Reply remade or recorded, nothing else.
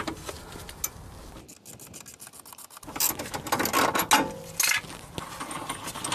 recorded